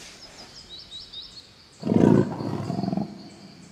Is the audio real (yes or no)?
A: yes